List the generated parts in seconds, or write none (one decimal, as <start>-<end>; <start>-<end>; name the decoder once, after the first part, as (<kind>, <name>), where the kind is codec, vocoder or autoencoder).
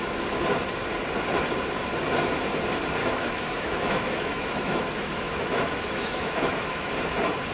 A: 3.0-6.9 (autoencoder, DAC-VAE)